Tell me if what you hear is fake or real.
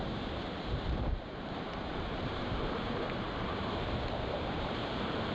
fake